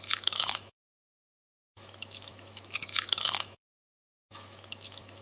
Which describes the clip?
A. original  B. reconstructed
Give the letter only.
B